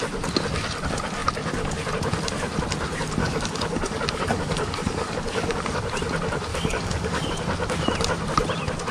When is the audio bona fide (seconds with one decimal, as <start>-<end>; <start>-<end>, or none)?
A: 0.0-3.2; 5.8-6.5; 7.3-8.9